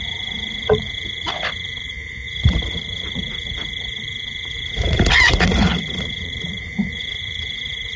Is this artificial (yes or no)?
yes